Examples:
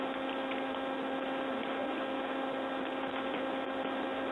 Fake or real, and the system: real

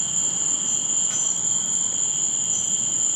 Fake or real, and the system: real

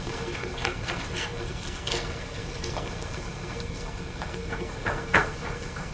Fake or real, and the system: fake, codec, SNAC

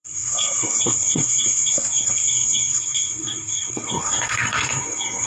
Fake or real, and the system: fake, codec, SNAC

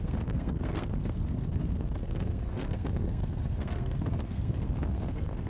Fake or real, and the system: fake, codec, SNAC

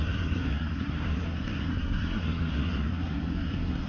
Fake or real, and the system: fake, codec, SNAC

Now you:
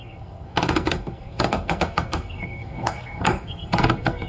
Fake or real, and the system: fake, codec, SNAC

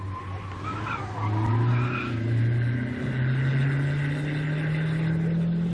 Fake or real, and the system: real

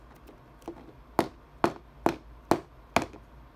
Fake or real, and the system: real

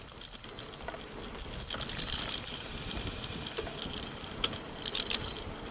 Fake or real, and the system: real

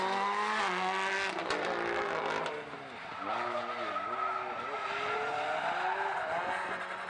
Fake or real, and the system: real